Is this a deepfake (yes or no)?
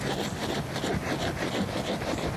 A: yes